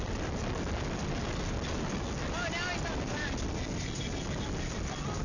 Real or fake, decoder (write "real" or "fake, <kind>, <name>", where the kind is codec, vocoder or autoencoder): real